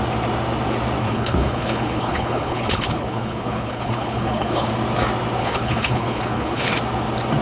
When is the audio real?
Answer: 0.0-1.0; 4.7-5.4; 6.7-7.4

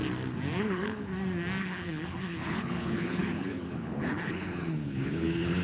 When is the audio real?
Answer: 0.0-0.6; 1.1-1.6

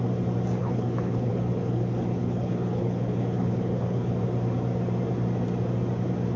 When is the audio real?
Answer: 0.0-0.6; 4.2-6.4

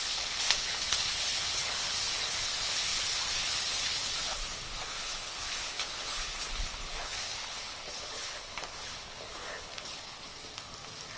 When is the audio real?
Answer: 10.3-11.2